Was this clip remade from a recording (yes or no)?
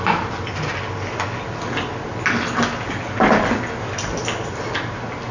no